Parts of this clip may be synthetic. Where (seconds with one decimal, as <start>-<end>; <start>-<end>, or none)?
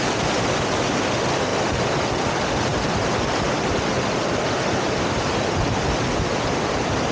none